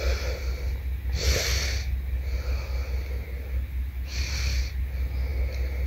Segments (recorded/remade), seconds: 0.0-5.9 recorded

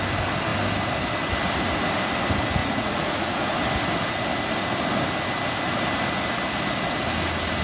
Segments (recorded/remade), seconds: 0.0-2.6 recorded; 2.6-3.6 remade; 3.6-7.6 recorded

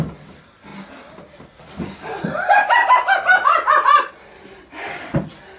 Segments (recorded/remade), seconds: 0.0-5.6 recorded

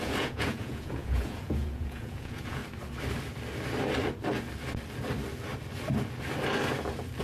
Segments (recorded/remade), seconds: 0.0-2.6 remade; 2.6-7.2 recorded

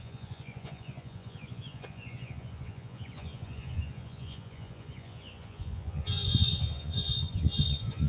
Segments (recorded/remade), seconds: 0.0-8.1 remade

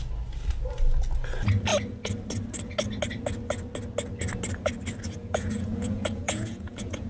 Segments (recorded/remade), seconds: 0.0-5.2 recorded; 5.2-7.1 remade

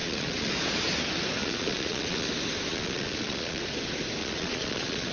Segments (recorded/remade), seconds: 0.0-0.5 remade; 0.5-1.4 recorded; 1.4-2.3 remade; 2.3-2.7 recorded; 2.7-3.6 remade; 3.6-4.2 recorded; 4.2-5.1 remade

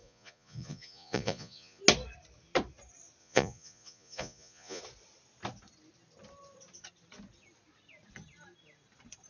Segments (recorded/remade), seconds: 0.0-1.8 remade; 1.8-3.2 recorded; 3.2-4.8 remade; 4.8-9.3 recorded